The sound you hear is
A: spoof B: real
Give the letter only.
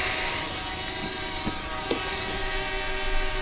B